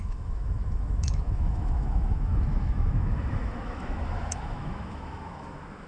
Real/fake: fake